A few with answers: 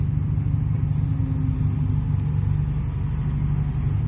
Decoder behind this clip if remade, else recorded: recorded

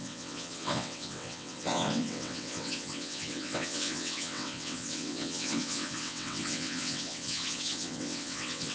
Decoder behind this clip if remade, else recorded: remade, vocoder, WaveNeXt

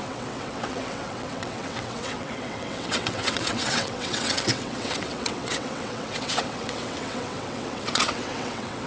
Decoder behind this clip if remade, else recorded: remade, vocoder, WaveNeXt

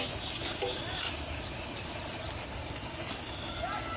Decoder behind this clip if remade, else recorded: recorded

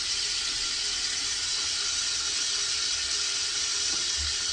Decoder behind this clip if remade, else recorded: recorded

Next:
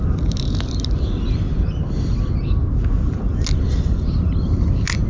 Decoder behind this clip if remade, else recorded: recorded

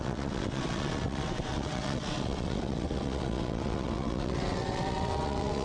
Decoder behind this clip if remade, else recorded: remade, vocoder, WaveNeXt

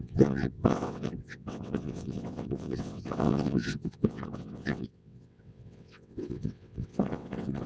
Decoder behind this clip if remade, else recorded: remade, vocoder, WaveNeXt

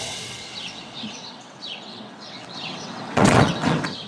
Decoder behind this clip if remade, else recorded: remade, vocoder, WaveNeXt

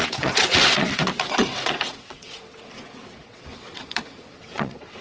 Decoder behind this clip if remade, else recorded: remade, vocoder, WaveNeXt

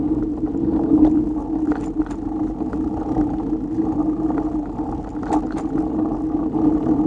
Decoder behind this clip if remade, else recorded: recorded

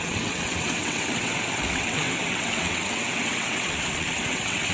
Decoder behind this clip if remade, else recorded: remade, vocoder, WaveNeXt